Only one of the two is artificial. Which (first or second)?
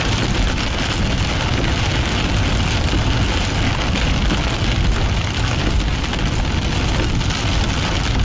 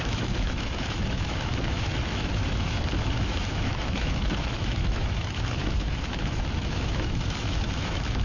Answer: second